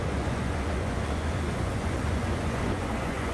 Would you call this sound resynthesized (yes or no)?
yes